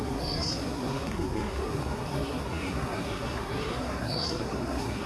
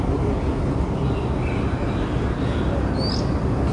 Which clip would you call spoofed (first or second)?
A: first